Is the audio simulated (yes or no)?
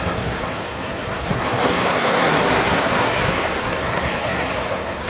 yes